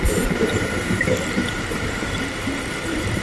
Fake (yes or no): yes